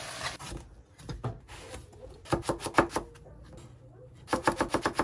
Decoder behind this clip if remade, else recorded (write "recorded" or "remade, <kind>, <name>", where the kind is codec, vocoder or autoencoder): recorded